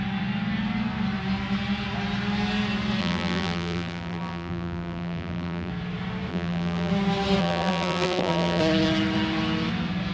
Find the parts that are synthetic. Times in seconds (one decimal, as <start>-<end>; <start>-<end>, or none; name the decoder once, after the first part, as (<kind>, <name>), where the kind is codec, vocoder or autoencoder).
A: 3.0-5.7 (vocoder, BigVGAN v2); 6.3-6.9; 7.4-8.6